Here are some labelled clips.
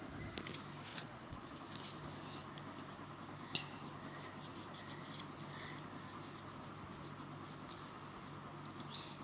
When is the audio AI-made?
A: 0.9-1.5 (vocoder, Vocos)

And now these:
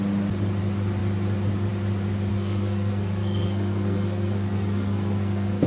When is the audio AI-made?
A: 2.3-5.7 (codec, SNAC)

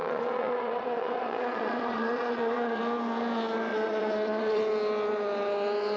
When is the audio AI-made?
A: 0.0-2.8 (vocoder, Vocos); 3.7-4.6

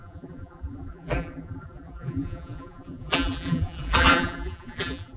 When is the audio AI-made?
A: 0.0-5.2 (vocoder, BigVGAN v2)

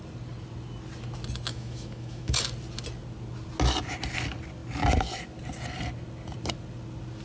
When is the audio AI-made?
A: 1.5-2.4 (autoencoder, DAC-VAE)